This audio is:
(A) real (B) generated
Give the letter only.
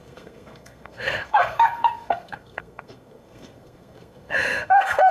B